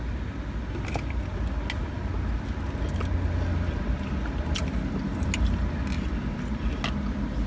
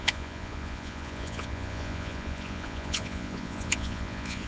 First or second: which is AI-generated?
second